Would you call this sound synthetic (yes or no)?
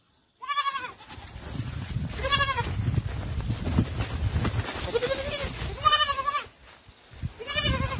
no